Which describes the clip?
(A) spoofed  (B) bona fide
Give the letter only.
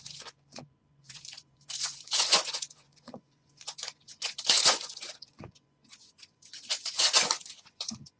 A